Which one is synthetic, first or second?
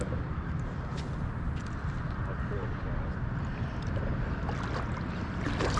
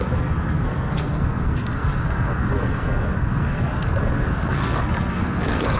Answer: second